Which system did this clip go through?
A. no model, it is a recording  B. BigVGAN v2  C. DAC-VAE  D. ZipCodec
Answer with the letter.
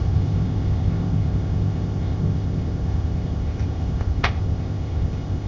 D